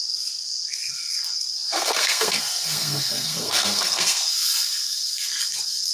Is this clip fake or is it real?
fake